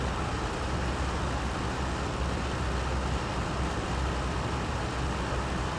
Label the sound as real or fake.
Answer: real